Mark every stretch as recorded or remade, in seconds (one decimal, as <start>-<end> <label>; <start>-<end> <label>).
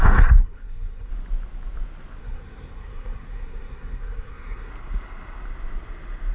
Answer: 0.0-0.4 recorded; 0.4-1.1 remade; 1.1-2.2 recorded; 2.2-4.7 remade; 4.7-6.3 recorded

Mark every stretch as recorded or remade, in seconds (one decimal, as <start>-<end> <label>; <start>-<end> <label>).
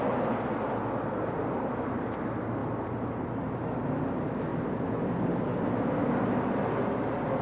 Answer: 0.0-7.4 recorded